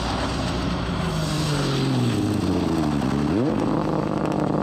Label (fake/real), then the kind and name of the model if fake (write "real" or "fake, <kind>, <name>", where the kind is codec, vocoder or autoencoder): real